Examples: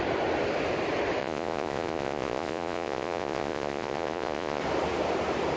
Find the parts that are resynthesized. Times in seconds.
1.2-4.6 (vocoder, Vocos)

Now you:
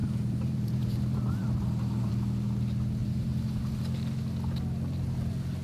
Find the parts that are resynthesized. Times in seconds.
0.0-2.1 (vocoder, BigVGAN v2); 3.0-3.8

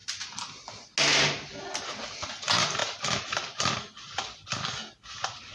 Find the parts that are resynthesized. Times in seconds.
2.8-3.8 (vocoder, BigVGAN v2)

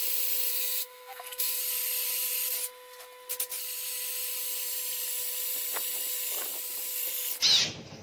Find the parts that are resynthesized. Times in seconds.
0.5-1.6 (codec, SNAC)